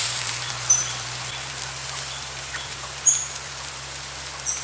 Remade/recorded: remade